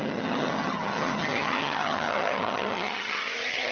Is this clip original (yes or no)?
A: no